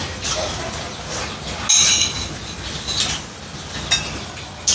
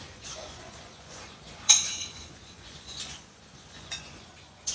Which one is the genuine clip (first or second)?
first